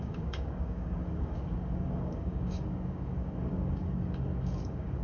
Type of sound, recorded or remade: remade